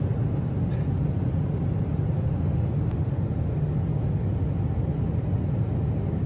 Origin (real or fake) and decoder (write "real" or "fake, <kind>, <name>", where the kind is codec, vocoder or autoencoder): real